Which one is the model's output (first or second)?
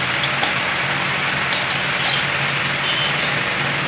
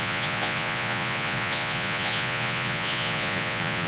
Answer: second